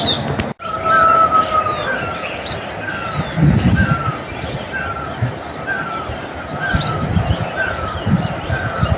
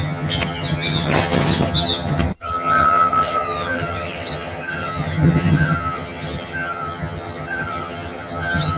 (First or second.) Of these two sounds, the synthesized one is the second